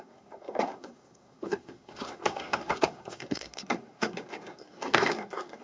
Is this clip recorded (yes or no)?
no